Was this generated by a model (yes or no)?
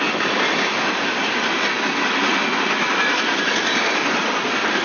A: no